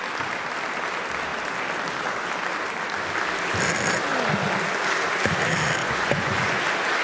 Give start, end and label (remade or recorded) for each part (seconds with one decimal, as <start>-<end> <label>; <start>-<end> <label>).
0.0-5.8 recorded; 5.8-6.6 remade; 6.6-7.0 recorded